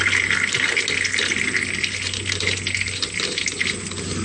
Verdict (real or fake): real